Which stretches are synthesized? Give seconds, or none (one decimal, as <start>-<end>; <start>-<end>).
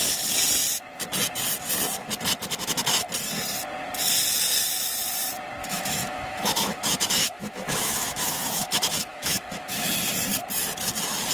5.6-9.9